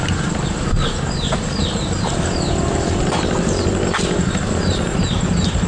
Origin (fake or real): fake